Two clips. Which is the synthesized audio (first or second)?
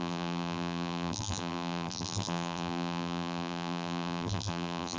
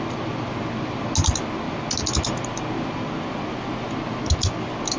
first